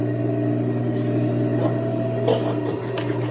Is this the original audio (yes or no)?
yes